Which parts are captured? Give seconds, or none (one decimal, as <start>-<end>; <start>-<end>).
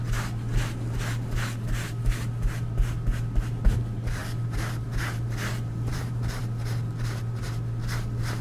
0.0-5.9; 6.4-8.4